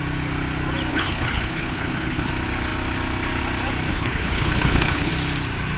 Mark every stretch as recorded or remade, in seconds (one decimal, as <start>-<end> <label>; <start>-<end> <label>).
0.0-0.9 recorded; 0.9-2.3 remade; 2.3-3.9 recorded; 3.9-5.1 remade; 5.1-5.8 recorded